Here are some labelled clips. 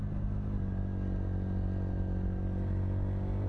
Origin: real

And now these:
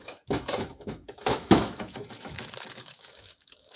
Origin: fake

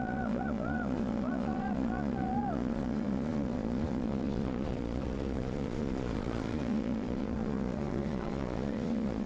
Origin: fake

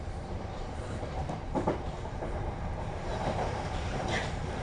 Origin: fake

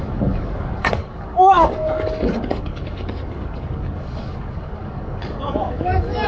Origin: fake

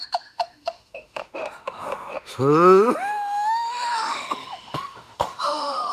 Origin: fake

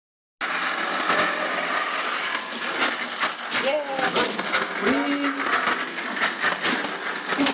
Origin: real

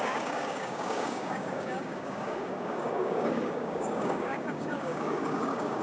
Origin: fake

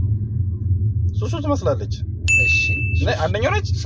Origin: real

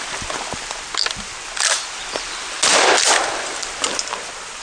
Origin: real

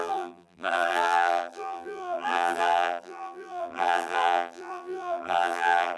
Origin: fake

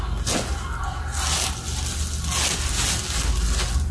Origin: real